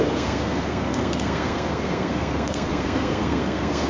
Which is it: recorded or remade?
remade